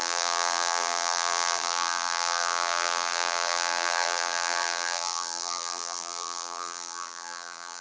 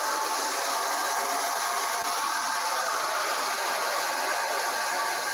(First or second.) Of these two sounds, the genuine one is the second